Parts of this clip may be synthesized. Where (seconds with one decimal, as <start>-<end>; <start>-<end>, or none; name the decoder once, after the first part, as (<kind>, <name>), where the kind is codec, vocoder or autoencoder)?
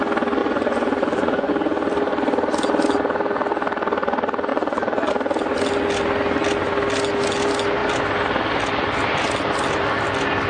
0.4-1.5 (vocoder, Vocos); 4.5-5.1